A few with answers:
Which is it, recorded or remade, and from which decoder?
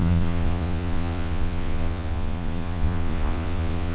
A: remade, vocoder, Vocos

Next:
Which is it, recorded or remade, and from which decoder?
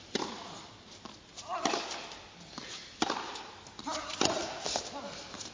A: recorded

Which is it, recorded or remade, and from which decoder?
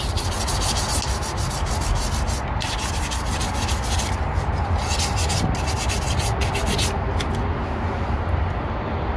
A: recorded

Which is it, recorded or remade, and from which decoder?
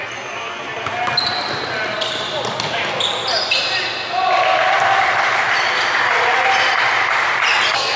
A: recorded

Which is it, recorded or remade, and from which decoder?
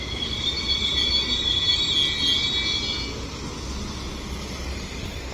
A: recorded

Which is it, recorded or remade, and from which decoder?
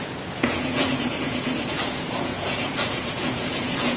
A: remade, vocoder, Vocos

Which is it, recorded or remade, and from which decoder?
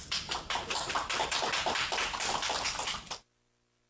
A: recorded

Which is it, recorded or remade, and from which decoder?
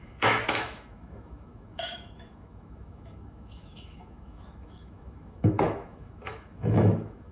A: remade, autoencoder, DAC-VAE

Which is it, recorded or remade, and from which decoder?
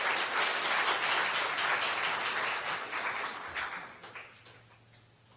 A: recorded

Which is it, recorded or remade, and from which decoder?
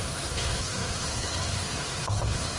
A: remade, codec, SNAC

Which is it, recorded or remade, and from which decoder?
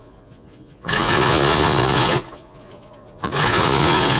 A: remade, vocoder, Vocos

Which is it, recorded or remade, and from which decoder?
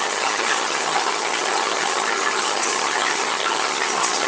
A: remade, vocoder, HiFi-GAN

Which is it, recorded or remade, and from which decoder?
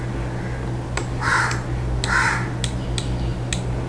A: recorded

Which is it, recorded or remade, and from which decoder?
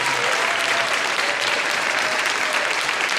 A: remade, vocoder, BigVGAN v2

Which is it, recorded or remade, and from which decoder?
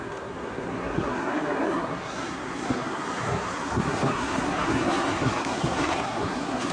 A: remade, codec, SNAC